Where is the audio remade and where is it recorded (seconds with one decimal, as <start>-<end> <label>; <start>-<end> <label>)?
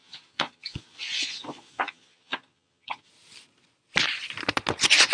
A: 0.0-3.1 remade; 3.1-5.1 recorded